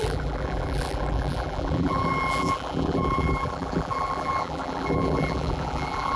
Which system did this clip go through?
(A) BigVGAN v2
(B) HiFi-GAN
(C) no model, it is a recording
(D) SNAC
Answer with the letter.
A